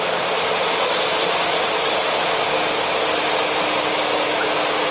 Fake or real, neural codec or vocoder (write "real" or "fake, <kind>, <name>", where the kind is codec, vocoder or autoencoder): real